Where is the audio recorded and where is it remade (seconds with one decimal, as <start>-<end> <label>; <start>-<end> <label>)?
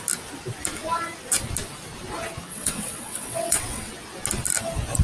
0.0-2.5 recorded; 2.5-3.9 remade; 3.9-5.0 recorded